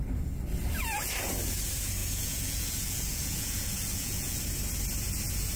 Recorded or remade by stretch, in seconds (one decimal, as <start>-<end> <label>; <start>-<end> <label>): 0.0-2.0 recorded; 2.0-4.4 remade; 4.4-5.6 recorded